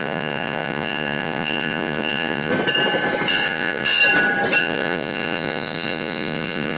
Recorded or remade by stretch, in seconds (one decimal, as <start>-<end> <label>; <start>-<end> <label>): 0.0-2.5 remade; 2.5-3.3 recorded; 3.3-4.0 remade; 4.0-4.6 recorded; 4.6-6.8 remade